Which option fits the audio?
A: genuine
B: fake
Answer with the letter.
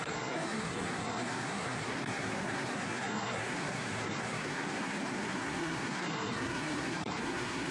B